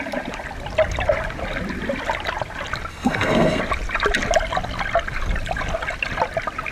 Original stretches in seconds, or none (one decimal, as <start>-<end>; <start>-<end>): 0.0-2.9; 3.6-6.7